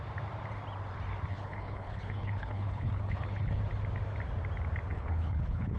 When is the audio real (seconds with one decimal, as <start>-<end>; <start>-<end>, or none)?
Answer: 0.0-1.3; 3.6-4.9